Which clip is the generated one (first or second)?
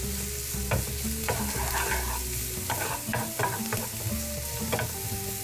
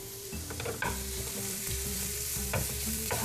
second